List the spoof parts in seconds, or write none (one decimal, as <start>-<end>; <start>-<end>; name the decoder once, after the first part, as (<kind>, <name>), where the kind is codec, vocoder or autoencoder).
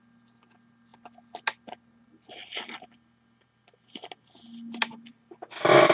none